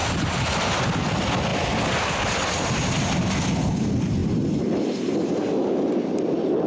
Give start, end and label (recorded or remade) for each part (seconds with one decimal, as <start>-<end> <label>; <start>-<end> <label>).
0.0-1.5 remade; 1.5-3.1 recorded; 3.1-6.7 remade